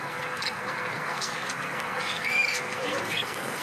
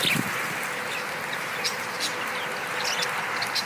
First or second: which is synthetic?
first